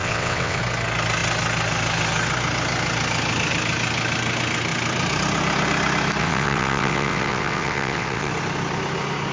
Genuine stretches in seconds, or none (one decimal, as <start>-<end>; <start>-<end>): 0.6-6.2; 8.3-9.3